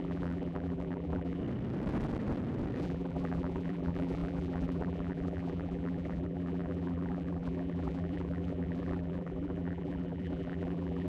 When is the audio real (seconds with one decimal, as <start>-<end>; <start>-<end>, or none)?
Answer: 1.4-2.8